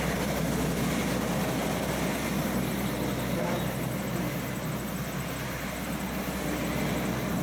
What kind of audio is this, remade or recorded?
recorded